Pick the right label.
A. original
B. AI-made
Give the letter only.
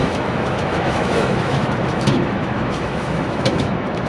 B